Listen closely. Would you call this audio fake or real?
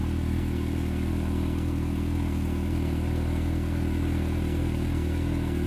fake